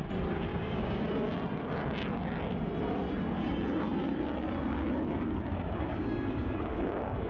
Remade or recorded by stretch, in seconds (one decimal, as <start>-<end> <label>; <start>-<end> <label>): 0.0-0.5 recorded; 0.5-1.0 remade; 1.0-5.5 recorded; 5.5-7.3 remade